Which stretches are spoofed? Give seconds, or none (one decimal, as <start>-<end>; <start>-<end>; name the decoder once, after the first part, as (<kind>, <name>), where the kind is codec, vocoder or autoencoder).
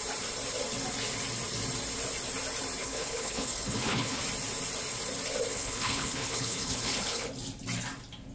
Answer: 2.8-4.2 (codec, HILCodec); 5.5-7.3